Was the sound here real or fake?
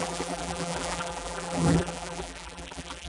fake